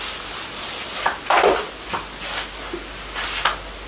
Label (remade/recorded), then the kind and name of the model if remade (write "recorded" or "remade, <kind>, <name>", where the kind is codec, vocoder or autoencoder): recorded